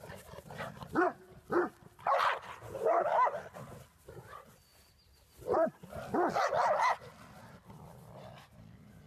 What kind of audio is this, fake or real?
real